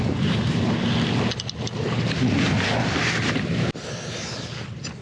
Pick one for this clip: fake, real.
real